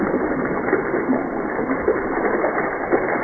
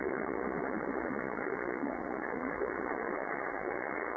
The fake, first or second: second